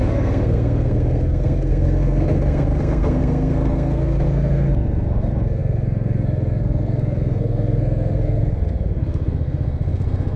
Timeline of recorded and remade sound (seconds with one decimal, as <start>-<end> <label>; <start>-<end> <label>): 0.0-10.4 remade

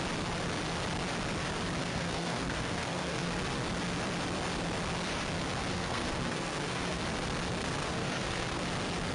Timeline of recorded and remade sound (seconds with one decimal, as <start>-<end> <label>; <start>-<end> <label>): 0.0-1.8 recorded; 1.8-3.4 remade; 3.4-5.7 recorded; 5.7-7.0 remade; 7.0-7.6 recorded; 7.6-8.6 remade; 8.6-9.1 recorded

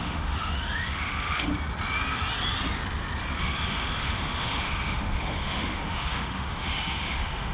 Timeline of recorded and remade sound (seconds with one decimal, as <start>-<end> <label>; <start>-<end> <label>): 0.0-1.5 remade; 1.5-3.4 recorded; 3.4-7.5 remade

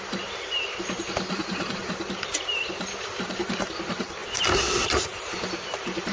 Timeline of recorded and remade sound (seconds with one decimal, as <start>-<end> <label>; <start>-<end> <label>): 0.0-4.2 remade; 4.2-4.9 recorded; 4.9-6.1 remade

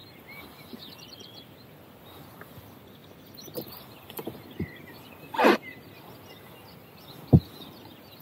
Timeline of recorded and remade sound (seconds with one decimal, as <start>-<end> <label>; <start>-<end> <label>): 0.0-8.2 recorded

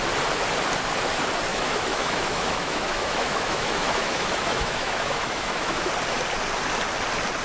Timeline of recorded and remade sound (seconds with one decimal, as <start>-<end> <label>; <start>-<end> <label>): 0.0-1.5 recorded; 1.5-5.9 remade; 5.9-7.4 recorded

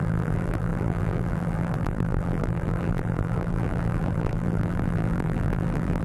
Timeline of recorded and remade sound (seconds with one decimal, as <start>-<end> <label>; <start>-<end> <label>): 0.0-6.0 remade

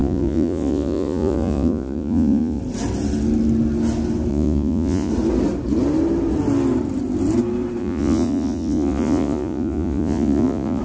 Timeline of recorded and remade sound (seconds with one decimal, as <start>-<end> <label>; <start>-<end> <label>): 0.0-2.6 remade; 2.6-4.3 recorded; 4.3-5.1 remade; 5.1-7.8 recorded; 7.8-10.8 remade